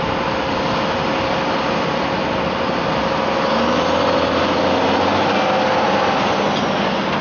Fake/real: real